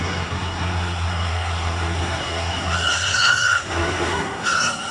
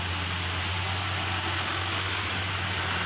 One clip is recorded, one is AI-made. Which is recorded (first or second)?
second